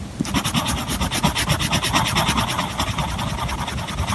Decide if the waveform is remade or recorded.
recorded